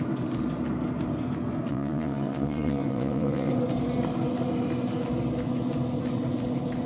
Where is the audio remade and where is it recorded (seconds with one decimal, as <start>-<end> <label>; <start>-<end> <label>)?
0.0-1.7 recorded; 1.7-3.5 remade; 3.5-6.9 recorded